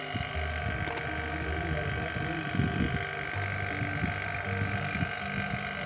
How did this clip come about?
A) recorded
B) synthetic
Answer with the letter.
A